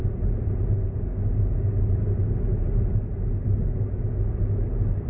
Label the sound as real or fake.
real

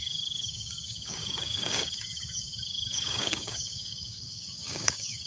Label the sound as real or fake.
fake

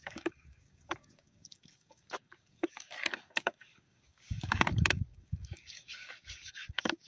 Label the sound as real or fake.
fake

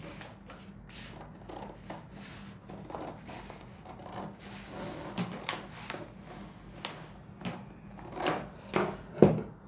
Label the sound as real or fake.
real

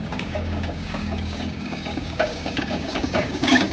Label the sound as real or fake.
fake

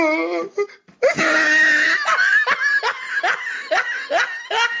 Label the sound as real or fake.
real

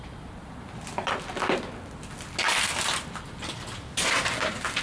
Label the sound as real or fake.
real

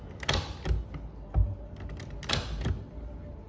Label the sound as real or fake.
real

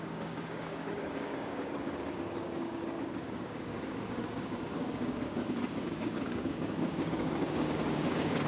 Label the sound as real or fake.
fake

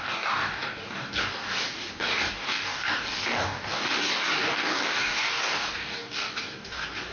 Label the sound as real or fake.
fake